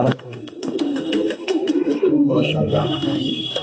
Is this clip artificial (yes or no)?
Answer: yes